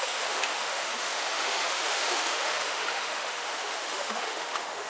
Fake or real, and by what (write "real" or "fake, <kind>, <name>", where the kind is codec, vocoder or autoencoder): fake, autoencoder, DAC-VAE